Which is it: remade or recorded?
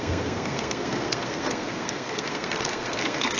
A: remade